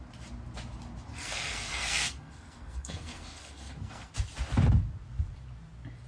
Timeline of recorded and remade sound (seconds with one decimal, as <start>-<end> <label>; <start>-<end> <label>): 0.0-1.1 recorded; 1.1-4.1 remade; 4.1-6.1 recorded